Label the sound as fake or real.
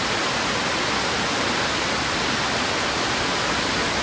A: real